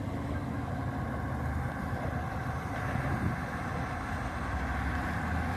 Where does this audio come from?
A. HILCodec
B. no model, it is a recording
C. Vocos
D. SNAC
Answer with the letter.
B